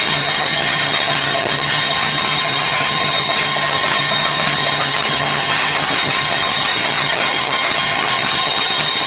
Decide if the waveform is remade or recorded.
remade